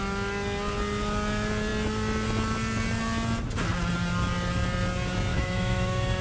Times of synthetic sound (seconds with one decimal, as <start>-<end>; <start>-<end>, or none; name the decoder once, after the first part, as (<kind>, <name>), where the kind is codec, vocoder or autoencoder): 5.3-6.2 (autoencoder, DAC-VAE)